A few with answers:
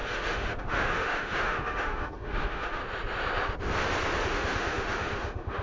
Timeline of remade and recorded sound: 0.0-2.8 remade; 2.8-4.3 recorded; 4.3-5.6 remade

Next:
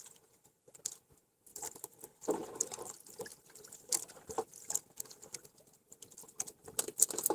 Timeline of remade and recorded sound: 0.0-7.3 recorded

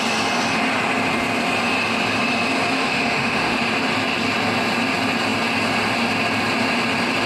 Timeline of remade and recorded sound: 0.0-2.8 recorded; 2.8-3.6 remade; 3.6-7.3 recorded

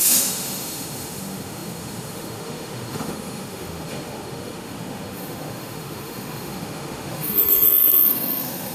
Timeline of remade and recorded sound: 0.0-8.7 remade

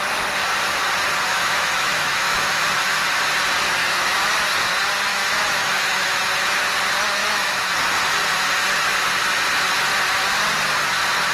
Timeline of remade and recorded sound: 0.0-1.3 recorded; 1.3-3.0 remade; 3.0-3.8 recorded; 3.8-4.4 remade; 4.4-5.1 recorded; 5.1-6.6 remade; 6.6-7.2 recorded; 7.2-7.7 remade; 7.7-11.3 recorded

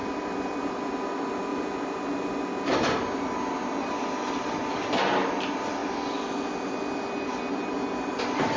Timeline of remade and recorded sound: 0.0-8.6 recorded

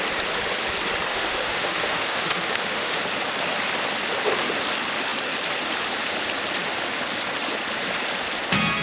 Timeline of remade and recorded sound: 0.0-1.1 recorded; 1.1-3.0 remade; 3.0-8.8 recorded

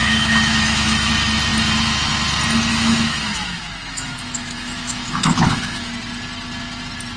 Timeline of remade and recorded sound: 0.0-1.1 remade; 1.1-2.7 recorded; 2.7-5.9 remade; 5.9-7.2 recorded